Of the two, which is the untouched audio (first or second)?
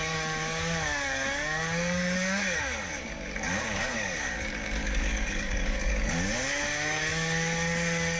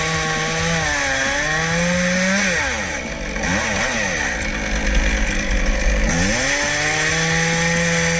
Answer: second